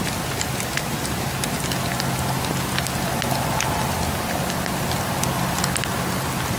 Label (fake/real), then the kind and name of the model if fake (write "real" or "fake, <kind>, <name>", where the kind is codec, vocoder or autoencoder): real